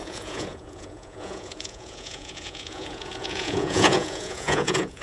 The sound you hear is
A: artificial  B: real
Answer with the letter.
A